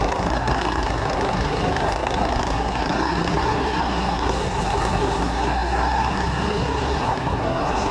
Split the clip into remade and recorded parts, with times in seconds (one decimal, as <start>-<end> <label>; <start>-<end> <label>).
0.0-7.9 remade